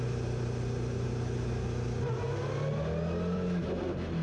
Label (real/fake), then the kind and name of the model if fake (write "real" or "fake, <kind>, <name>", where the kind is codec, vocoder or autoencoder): real